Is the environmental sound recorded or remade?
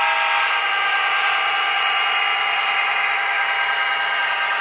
recorded